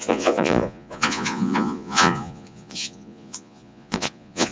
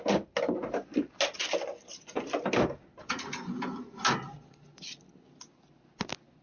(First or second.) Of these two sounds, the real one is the second